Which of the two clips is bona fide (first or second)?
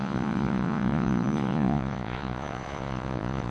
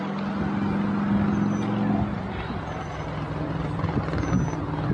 second